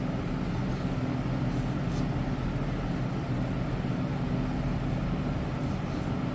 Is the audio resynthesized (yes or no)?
no